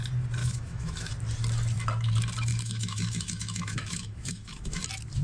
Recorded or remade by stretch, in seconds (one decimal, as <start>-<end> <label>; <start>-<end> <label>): 0.0-0.4 recorded; 0.4-1.1 remade; 1.1-2.5 recorded; 2.5-4.8 remade; 4.8-5.2 recorded